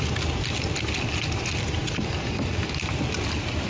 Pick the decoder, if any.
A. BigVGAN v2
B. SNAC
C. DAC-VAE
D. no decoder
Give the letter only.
D